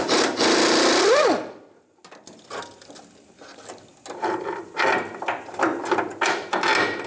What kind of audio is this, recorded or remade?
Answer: recorded